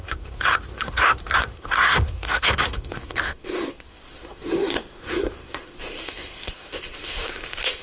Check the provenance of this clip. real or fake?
fake